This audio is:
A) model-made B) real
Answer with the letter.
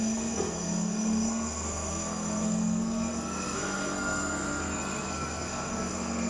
A